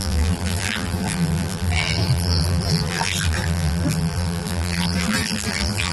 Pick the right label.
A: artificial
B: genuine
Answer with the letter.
A